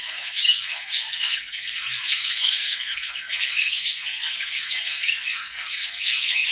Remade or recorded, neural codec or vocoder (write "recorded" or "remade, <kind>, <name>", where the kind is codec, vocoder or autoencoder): remade, codec, SNAC